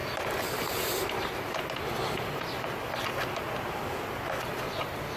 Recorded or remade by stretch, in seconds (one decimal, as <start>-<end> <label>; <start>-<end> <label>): 0.0-1.6 remade; 1.6-5.2 recorded